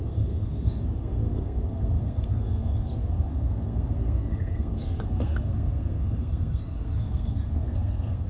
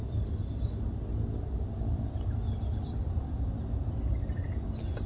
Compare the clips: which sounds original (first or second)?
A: second